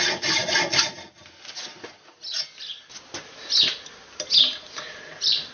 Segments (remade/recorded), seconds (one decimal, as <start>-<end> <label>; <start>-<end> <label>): 0.0-5.5 recorded